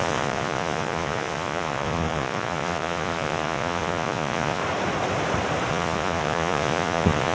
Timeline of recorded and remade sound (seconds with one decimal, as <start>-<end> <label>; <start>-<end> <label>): 0.0-4.6 remade; 4.6-5.7 recorded; 5.7-7.3 remade